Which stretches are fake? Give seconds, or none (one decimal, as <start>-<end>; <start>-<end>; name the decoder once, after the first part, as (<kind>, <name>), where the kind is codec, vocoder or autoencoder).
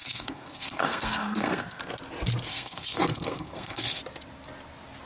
0.0-1.8 (codec, SNAC); 2.5-4.0